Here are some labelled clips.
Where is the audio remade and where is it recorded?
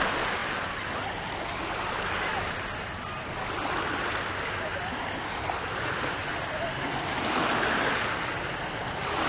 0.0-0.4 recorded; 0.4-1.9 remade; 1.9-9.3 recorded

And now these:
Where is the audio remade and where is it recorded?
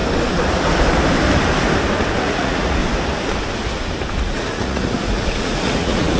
0.0-2.2 recorded; 2.2-2.8 remade; 2.8-4.2 recorded; 4.2-6.2 remade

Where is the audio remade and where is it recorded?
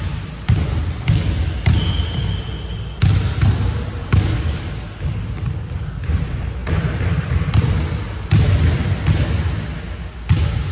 0.0-4.0 recorded; 4.0-4.7 remade; 4.7-10.7 recorded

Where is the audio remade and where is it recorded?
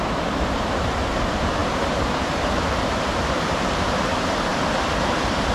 0.0-4.5 remade; 4.5-5.0 recorded; 5.0-5.5 remade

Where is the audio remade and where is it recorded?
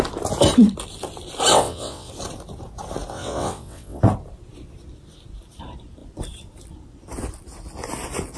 0.0-1.5 recorded; 1.5-2.1 remade; 2.1-3.1 recorded; 3.1-4.0 remade; 4.0-8.4 recorded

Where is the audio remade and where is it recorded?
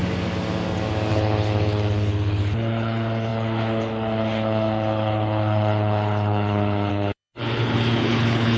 0.0-1.1 recorded; 1.1-8.6 remade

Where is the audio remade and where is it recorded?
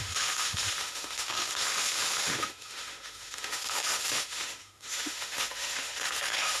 0.0-6.6 remade